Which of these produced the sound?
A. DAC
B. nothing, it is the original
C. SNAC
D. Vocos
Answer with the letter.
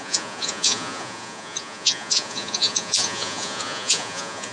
D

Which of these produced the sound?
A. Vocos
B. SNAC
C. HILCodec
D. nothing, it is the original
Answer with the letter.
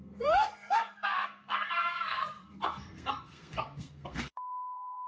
B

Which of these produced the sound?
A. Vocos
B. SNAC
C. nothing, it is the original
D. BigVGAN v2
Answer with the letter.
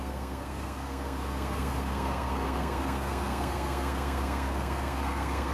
B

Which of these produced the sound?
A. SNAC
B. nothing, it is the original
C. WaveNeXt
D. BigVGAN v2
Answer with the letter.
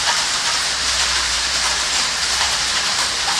D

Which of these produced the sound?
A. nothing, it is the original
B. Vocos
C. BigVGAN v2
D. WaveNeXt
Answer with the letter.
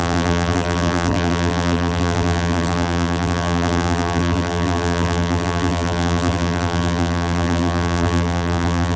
C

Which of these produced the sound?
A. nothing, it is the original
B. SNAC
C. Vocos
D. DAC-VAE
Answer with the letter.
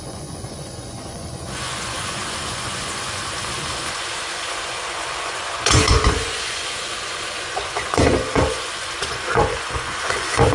C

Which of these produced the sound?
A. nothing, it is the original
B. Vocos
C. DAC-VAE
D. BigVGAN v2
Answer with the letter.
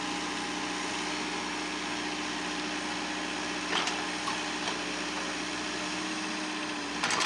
A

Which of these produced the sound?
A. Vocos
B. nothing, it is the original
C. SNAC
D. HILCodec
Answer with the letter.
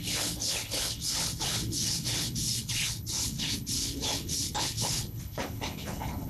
D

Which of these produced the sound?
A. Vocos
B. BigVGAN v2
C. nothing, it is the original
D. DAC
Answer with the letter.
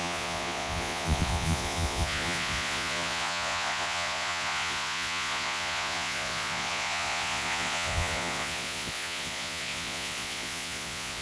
A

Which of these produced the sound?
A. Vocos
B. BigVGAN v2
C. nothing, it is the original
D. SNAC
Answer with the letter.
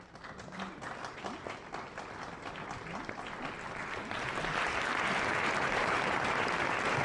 C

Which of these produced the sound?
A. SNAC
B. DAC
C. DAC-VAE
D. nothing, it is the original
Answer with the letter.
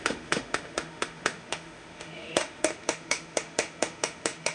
C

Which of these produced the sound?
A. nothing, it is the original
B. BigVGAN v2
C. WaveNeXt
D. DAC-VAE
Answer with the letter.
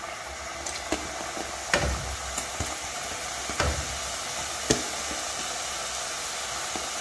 A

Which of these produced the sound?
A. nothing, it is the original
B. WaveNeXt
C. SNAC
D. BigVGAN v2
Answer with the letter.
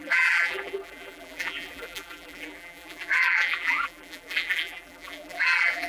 D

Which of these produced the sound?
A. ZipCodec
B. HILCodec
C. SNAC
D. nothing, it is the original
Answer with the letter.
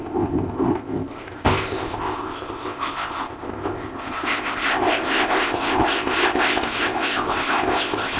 A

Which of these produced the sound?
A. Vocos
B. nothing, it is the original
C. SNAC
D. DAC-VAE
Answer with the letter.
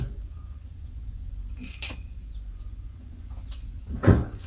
A